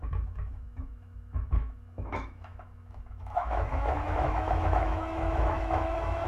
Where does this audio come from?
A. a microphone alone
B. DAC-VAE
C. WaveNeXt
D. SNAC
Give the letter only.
B